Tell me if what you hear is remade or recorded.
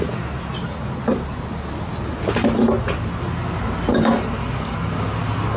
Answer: recorded